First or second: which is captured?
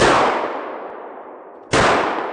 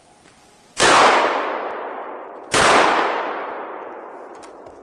first